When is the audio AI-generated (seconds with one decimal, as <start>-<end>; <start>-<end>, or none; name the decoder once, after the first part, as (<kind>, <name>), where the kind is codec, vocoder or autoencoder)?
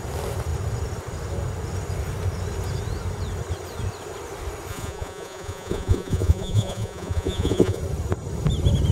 4.7-7.8 (vocoder, Vocos)